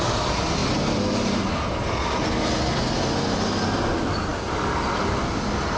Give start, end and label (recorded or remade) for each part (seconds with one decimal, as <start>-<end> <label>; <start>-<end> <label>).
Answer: 0.0-5.8 recorded